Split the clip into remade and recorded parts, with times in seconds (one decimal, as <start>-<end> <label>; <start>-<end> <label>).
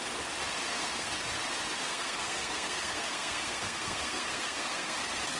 0.0-0.7 recorded; 0.7-1.2 remade; 1.2-1.8 recorded; 1.8-5.0 remade; 5.0-5.4 recorded